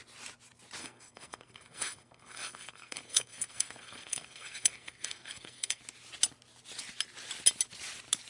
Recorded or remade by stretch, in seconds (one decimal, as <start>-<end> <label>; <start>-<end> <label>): 0.0-0.8 recorded; 0.8-5.8 remade; 5.8-8.3 recorded